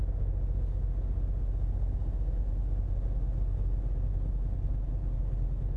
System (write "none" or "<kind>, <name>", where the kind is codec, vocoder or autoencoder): none